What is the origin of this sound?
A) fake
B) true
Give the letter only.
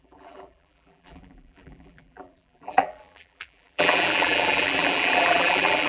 A